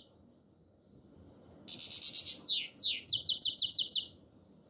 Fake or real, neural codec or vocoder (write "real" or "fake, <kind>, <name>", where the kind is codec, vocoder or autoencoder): real